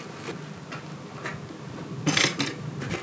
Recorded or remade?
recorded